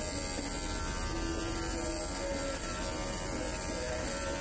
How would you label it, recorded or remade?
recorded